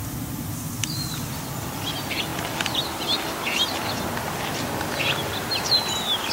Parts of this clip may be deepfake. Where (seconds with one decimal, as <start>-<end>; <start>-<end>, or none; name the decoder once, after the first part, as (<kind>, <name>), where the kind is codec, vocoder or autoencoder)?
none